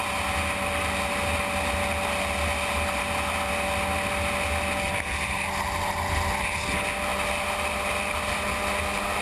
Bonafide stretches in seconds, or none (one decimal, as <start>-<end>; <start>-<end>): 0.0-9.2